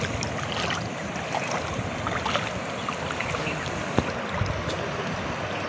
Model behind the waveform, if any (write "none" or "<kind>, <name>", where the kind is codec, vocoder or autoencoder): none